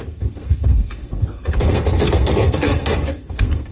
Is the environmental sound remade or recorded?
remade